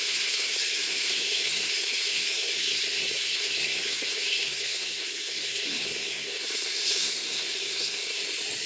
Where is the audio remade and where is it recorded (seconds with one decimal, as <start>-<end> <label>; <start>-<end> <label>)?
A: 0.0-8.2 remade; 8.2-8.7 recorded